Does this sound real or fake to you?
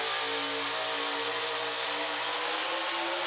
real